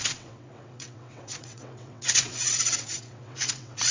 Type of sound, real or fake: fake